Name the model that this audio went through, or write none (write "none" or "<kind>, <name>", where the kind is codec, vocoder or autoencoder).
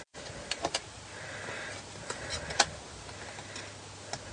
none